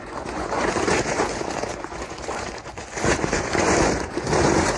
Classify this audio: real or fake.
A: fake